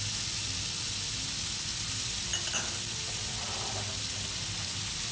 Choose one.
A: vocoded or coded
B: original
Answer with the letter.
B